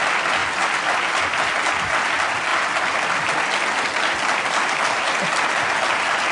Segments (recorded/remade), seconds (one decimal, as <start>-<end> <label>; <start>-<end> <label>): 0.0-6.3 recorded